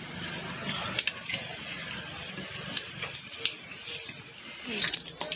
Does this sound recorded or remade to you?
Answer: recorded